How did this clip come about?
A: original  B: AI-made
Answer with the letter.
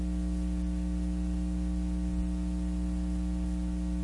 A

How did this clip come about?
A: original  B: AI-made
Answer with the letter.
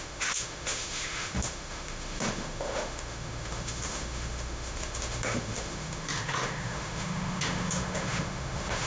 B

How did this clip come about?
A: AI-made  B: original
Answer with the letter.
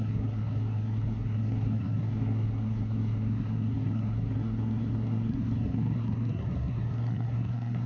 A